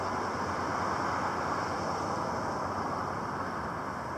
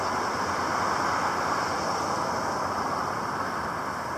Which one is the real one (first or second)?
first